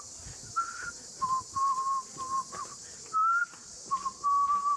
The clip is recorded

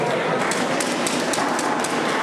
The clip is recorded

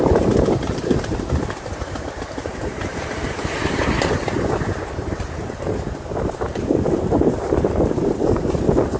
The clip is remade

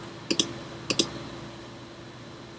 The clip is recorded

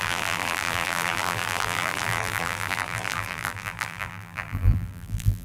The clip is remade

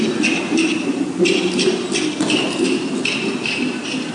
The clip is recorded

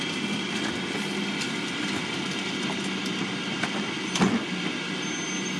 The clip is recorded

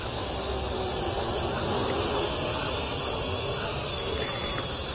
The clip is recorded